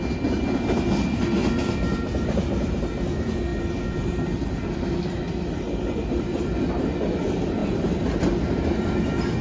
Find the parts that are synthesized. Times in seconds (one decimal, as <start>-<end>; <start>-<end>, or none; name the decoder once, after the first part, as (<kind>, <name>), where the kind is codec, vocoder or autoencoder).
1.6-2.7 (vocoder, BigVGAN v2); 7.6-8.2